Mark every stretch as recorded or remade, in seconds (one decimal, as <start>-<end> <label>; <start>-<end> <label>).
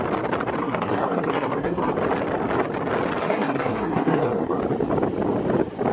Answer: 0.0-0.6 recorded; 0.6-1.9 remade; 1.9-3.2 recorded; 3.2-4.6 remade; 4.6-5.9 recorded